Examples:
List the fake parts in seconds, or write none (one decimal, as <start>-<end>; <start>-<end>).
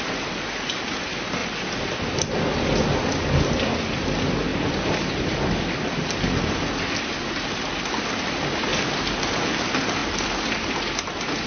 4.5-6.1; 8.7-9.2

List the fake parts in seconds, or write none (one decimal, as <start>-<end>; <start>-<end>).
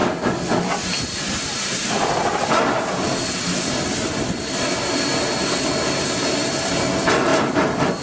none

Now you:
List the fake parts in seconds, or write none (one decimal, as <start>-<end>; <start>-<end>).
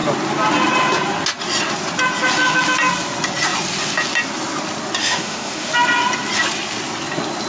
5.0-5.7